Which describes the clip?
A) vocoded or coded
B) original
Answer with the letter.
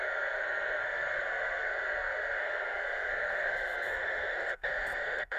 A